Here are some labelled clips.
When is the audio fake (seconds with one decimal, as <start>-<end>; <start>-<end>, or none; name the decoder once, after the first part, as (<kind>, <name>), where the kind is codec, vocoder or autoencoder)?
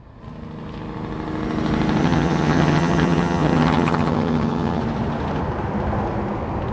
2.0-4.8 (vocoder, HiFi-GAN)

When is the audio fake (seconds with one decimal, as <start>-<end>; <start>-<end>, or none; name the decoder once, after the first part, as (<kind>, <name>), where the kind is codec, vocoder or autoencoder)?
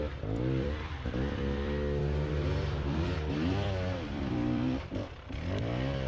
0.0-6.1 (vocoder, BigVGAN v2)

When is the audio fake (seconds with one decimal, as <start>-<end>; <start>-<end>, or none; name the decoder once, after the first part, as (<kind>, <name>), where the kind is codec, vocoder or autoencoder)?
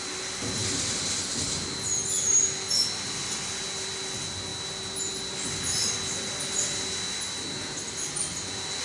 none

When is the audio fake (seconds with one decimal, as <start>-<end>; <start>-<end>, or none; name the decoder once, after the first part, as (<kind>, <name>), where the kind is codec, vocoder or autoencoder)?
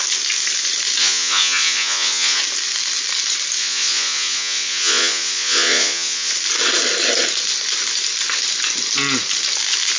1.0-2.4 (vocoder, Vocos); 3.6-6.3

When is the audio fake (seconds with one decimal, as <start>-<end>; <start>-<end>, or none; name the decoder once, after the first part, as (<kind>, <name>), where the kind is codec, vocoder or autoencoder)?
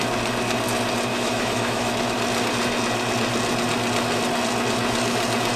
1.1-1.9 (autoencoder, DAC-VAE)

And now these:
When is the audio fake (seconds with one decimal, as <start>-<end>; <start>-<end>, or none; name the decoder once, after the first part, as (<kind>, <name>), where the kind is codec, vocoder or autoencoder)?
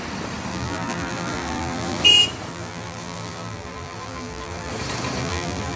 0.5-2.0 (vocoder, BigVGAN v2); 2.5-4.7; 5.2-5.8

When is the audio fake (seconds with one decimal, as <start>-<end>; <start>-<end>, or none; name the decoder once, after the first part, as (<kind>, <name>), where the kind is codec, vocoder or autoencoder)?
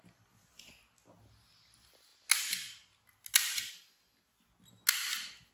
none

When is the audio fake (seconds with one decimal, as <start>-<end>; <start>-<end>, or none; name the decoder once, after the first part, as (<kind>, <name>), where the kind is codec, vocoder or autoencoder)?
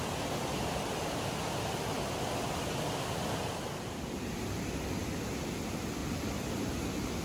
6.0-6.6 (vocoder, BigVGAN v2)